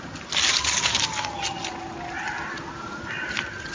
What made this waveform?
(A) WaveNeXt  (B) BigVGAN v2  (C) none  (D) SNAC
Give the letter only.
C